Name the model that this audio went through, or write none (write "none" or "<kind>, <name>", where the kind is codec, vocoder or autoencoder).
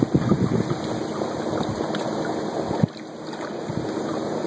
none